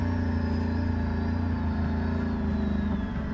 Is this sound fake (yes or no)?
no